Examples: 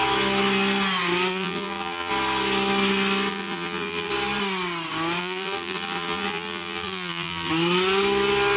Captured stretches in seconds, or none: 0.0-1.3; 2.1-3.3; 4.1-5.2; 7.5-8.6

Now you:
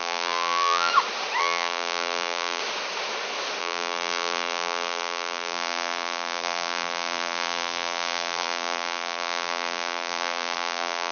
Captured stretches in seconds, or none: 0.9-1.4; 2.6-3.6

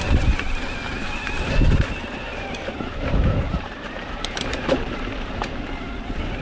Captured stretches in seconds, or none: 0.0-2.3; 5.6-6.4

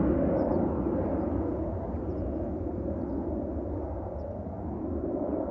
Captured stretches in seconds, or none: 0.0-5.5

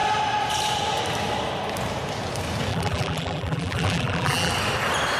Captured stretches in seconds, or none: 0.0-2.7; 4.5-5.2